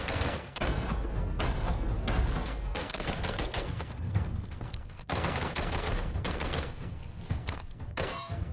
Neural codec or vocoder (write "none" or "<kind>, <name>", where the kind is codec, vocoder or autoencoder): codec, SNAC